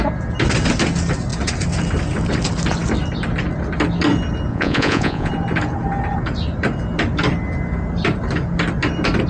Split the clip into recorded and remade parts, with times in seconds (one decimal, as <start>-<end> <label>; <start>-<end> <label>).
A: 0.0-4.5 recorded; 4.5-5.3 remade; 5.3-9.3 recorded